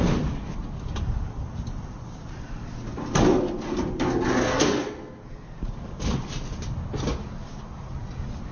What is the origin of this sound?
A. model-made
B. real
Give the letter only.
B